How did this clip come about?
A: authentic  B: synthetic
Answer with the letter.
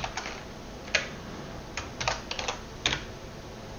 A